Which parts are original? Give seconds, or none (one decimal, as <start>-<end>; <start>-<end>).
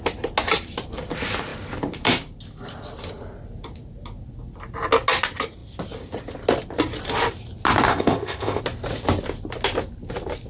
0.0-7.9; 8.6-10.5